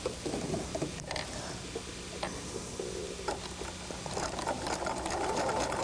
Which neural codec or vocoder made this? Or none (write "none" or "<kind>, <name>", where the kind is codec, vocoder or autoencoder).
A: none